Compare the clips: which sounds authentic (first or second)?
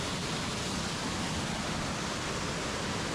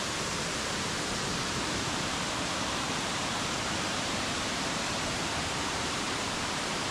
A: first